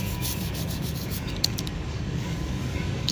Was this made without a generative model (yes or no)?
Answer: no